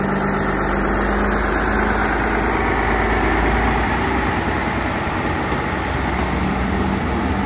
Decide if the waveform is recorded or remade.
recorded